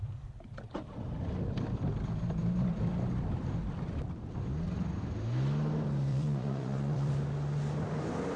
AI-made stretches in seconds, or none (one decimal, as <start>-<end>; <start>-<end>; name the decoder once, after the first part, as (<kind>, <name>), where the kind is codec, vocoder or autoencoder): 6.1-7.1 (vocoder, Vocos)